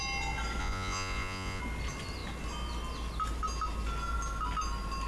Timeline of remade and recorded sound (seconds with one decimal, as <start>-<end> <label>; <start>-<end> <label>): 0.0-0.6 recorded; 0.6-1.6 remade; 1.6-5.1 recorded